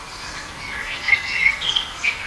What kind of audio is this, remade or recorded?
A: remade